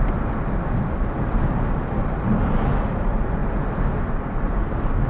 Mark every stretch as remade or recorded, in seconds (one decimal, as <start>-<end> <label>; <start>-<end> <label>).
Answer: 0.0-5.1 recorded